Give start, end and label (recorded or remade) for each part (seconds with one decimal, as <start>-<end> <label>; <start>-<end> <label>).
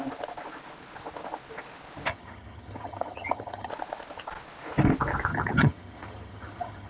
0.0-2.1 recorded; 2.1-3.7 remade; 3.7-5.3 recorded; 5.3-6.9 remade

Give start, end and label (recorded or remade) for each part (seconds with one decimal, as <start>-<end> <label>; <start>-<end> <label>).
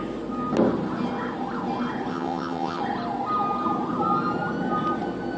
0.0-2.1 recorded; 2.1-2.8 remade; 2.8-5.4 recorded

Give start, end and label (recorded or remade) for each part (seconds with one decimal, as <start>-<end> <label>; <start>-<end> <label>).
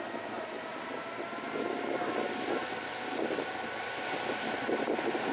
0.0-5.3 recorded